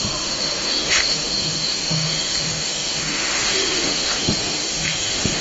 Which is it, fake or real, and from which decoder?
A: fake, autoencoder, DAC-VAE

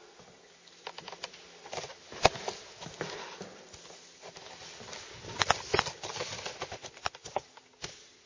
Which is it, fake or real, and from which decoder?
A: real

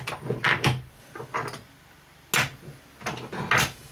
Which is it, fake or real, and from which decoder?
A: real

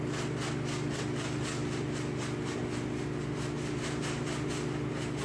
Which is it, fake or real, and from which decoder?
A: real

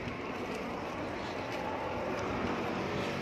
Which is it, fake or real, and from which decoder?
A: real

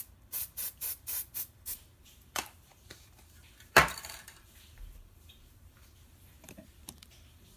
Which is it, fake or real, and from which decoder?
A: fake, vocoder, BigVGAN v2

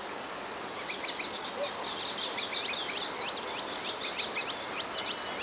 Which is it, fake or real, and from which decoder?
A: real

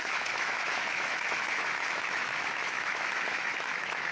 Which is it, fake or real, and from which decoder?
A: fake, autoencoder, DAC-VAE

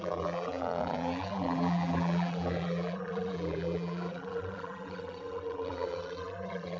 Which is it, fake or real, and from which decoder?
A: fake, vocoder, BigVGAN v2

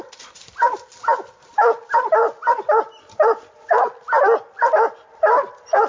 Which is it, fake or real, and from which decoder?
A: real